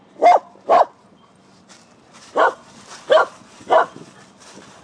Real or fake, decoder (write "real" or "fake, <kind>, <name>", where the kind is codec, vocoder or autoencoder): fake, vocoder, BigVGAN v2